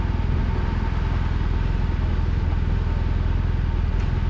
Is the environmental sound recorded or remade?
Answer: recorded